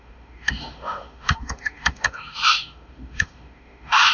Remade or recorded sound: remade